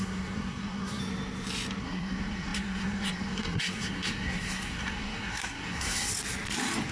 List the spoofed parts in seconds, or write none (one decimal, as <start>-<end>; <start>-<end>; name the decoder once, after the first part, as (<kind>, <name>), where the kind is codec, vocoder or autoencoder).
0.0-1.0 (codec, SNAC); 1.8-6.1